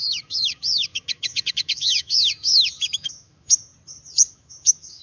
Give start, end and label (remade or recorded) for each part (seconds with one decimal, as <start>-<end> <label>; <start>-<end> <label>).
0.0-3.7 remade; 3.7-4.3 recorded; 4.3-5.0 remade